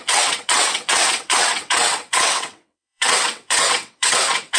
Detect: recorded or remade remade